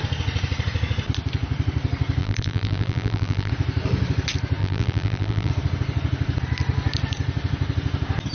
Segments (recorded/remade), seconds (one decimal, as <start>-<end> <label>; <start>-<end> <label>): 0.0-2.2 recorded; 2.2-3.5 remade; 3.5-4.6 recorded; 4.6-5.5 remade; 5.5-8.3 recorded